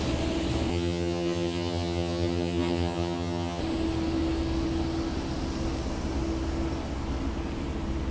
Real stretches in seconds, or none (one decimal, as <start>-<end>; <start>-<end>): 0.0-0.7; 3.6-8.1